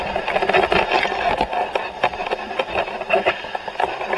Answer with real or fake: real